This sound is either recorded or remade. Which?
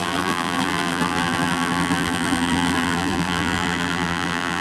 remade